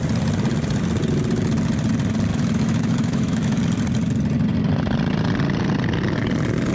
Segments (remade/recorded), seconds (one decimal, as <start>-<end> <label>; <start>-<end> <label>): 0.0-2.3 recorded; 2.3-3.6 remade; 3.6-6.7 recorded